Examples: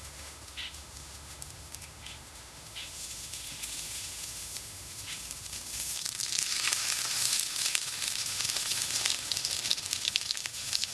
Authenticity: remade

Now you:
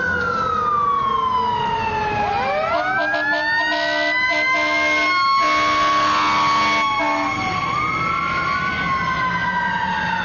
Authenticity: recorded